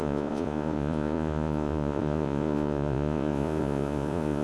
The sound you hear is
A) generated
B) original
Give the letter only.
A